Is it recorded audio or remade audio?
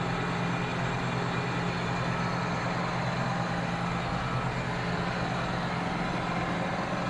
recorded